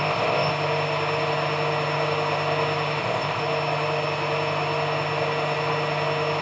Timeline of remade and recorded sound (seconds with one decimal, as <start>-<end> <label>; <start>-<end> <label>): 0.0-0.5 remade; 0.5-3.0 recorded; 3.0-3.4 remade; 3.4-6.4 recorded